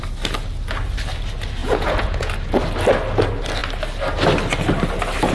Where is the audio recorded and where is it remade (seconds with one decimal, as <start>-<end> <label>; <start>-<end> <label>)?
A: 0.0-1.6 recorded; 1.6-2.3 remade; 2.3-5.3 recorded